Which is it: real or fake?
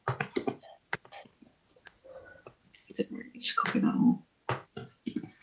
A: real